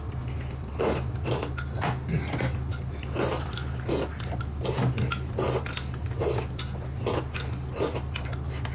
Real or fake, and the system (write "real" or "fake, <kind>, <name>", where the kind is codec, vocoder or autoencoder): real